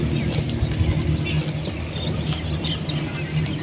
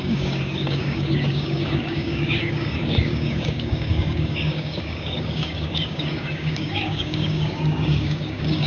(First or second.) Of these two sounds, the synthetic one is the second